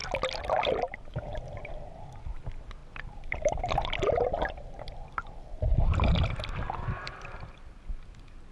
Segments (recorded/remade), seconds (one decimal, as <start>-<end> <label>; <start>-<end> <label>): 0.0-2.8 recorded; 2.8-7.7 remade; 7.7-8.5 recorded